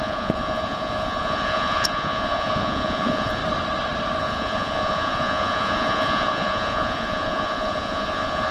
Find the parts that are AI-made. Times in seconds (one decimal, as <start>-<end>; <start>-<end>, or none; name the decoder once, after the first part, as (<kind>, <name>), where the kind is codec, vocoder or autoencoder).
0.0-3.4 (vocoder, Vocos); 4.2-8.5

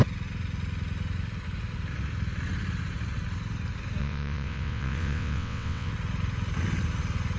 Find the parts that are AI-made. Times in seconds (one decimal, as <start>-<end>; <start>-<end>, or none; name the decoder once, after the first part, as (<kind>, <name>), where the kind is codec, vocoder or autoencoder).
4.0-5.9 (vocoder, WaveNeXt)

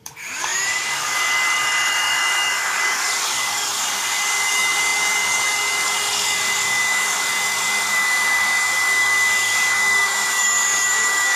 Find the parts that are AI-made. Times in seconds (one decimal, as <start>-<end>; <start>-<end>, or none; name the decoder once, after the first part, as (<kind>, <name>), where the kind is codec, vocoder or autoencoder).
0.0-11.4 (codec, DAC)

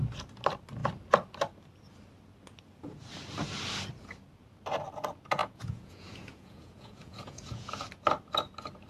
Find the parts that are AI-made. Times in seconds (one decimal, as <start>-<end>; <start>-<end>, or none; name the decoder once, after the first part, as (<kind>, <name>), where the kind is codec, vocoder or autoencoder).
5.4-7.7 (vocoder, Vocos)

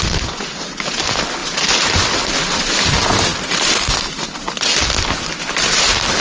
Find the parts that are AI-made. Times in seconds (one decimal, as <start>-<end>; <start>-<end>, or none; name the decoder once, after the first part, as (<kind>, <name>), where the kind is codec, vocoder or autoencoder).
none